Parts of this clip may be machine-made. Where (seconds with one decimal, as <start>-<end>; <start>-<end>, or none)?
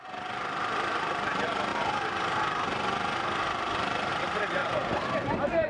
0.0-4.6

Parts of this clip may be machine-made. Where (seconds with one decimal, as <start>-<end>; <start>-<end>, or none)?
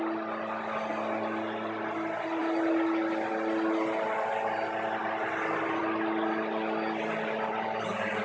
5.0-5.8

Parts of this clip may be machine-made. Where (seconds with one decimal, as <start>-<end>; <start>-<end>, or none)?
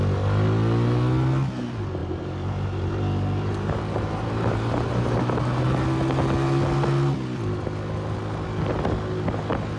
2.0-5.2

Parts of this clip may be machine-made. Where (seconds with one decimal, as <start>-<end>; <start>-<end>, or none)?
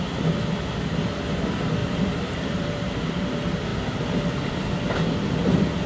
1.8-3.3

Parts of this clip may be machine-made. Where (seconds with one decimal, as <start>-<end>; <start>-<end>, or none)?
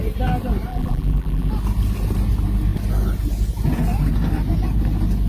0.7-1.5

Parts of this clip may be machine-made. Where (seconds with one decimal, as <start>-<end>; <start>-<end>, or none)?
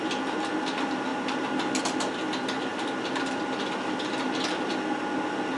none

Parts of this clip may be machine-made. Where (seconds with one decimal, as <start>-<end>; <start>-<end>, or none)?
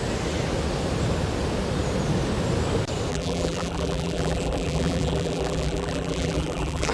3.1-6.9